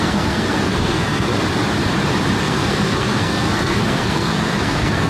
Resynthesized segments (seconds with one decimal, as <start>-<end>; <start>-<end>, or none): 0.0-1.3; 2.4-5.1